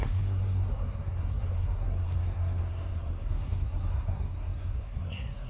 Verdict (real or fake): fake